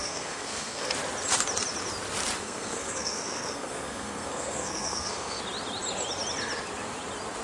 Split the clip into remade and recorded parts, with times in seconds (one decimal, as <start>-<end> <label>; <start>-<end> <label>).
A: 0.0-0.9 remade; 0.9-2.4 recorded; 2.4-5.4 remade; 5.4-7.4 recorded